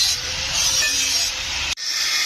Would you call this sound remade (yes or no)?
yes